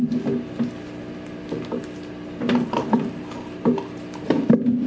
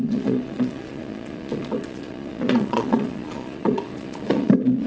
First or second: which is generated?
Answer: second